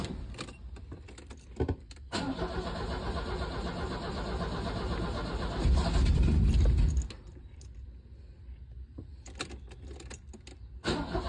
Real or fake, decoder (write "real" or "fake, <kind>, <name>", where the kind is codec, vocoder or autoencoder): real